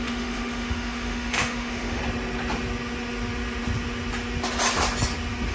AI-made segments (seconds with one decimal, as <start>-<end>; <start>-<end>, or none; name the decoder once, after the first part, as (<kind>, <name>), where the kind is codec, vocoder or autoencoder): 0.0-2.0 (autoencoder, DAC-VAE)